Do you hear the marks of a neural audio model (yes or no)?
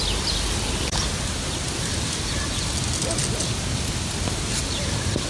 no